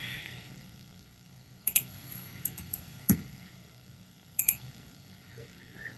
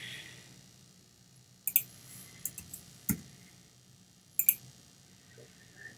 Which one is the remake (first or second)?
first